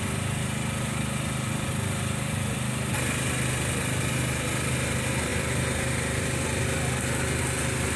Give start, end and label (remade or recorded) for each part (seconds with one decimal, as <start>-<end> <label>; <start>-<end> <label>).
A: 0.0-8.0 recorded